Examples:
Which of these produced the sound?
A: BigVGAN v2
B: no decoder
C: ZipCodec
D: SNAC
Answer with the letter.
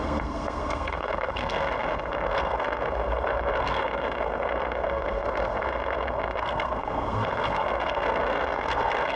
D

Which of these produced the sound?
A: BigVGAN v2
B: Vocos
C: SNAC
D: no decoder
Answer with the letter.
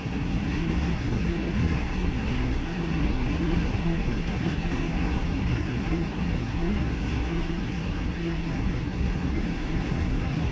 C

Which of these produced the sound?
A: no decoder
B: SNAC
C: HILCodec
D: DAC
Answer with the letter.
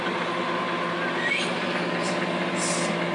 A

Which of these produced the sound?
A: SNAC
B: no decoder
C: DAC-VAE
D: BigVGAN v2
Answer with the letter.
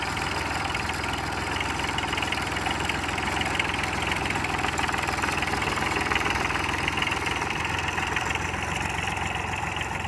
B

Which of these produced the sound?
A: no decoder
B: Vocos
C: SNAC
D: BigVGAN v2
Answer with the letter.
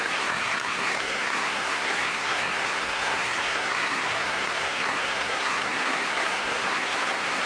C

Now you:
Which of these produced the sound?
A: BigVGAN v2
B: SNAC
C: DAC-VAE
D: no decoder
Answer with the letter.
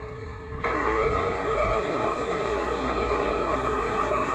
B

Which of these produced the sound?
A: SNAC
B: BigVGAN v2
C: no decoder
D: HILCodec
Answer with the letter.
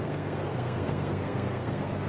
A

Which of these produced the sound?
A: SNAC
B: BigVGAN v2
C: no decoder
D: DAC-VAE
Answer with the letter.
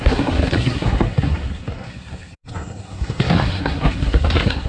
A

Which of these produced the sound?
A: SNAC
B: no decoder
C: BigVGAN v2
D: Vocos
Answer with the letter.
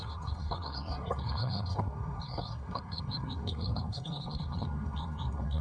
A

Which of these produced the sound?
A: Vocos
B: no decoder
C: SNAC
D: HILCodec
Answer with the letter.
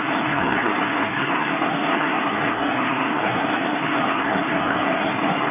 C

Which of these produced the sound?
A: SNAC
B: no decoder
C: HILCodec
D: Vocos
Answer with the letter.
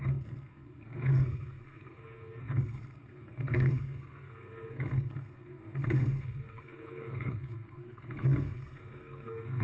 A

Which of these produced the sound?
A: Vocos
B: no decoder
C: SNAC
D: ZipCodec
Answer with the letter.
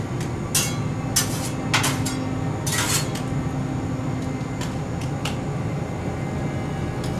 B